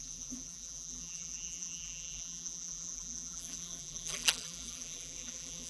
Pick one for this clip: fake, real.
fake